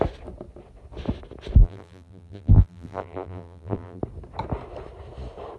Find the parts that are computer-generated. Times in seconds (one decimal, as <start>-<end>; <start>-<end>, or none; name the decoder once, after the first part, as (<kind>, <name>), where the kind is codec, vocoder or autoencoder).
1.6-4.0 (vocoder, BigVGAN v2)